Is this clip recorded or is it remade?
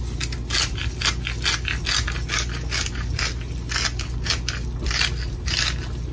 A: recorded